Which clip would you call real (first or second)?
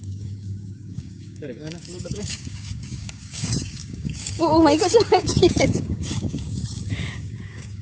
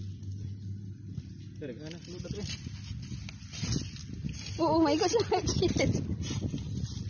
second